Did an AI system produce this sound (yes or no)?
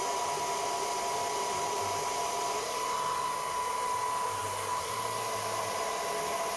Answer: no